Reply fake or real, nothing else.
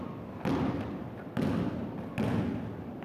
real